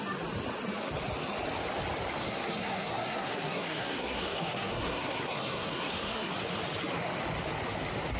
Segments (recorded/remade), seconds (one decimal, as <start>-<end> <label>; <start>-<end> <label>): 0.0-2.2 recorded; 2.2-6.3 remade; 6.3-8.2 recorded